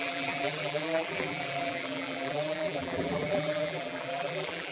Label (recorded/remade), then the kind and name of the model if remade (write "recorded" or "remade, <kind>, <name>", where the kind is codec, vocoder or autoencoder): remade, vocoder, BigVGAN v2